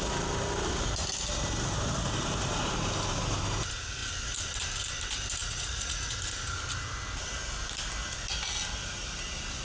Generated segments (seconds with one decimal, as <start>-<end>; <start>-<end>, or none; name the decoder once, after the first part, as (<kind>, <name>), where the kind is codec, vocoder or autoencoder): 5.4-6.2 (vocoder, Vocos)